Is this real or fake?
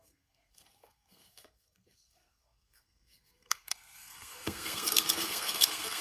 fake